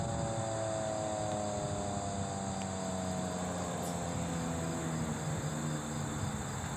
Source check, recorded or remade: recorded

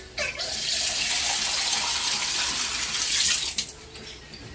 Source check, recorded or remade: recorded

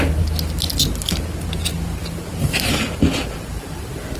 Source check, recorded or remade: recorded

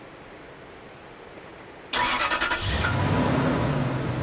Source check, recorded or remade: recorded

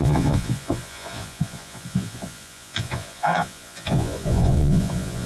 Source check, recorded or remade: remade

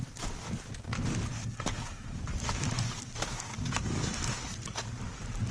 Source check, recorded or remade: recorded